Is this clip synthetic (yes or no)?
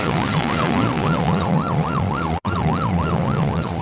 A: yes